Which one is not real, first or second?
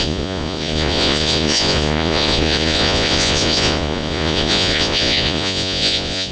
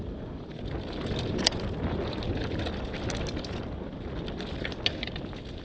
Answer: first